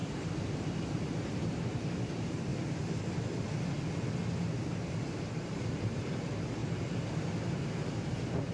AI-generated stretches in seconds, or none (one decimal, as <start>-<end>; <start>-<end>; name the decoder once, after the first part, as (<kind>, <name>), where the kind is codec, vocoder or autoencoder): 0.5-2.5 (vocoder, BigVGAN v2); 4.5-6.6

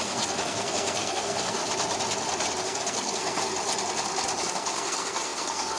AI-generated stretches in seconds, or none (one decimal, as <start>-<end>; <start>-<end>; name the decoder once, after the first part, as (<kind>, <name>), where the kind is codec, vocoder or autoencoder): 0.0-1.6 (codec, SNAC); 2.6-3.5; 4.4-5.8

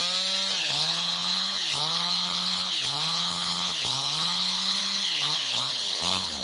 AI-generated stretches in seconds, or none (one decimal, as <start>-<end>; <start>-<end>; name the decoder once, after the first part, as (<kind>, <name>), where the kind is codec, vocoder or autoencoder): 0.6-6.4 (codec, HILCodec)